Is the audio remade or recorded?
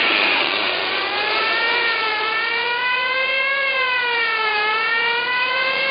remade